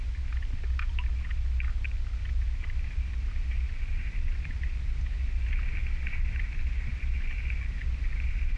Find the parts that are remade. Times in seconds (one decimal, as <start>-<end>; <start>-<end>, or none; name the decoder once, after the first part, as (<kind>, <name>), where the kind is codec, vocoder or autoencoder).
none